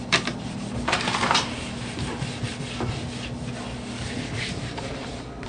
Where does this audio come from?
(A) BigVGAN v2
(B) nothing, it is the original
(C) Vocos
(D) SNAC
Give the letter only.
B